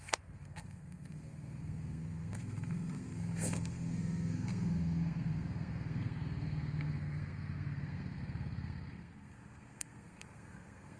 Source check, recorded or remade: remade